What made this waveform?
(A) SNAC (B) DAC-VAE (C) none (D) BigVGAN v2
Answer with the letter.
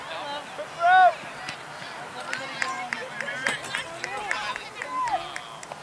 C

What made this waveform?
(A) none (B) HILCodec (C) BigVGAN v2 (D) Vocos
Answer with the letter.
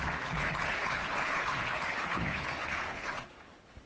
B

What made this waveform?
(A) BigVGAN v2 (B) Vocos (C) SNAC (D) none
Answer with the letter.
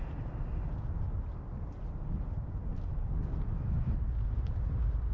D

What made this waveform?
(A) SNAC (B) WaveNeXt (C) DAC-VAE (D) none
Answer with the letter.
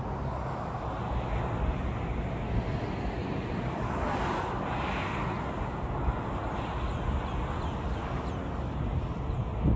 D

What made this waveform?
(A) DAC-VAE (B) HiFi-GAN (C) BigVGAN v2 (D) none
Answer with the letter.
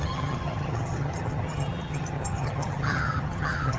B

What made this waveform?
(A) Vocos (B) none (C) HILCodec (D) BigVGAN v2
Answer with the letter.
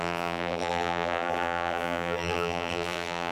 D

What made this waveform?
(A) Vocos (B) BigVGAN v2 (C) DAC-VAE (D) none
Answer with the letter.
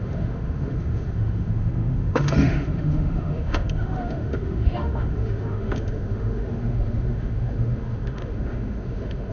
C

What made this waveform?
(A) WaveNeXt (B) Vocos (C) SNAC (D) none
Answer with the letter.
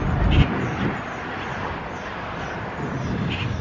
D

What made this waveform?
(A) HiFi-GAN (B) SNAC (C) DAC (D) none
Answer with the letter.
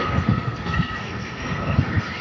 B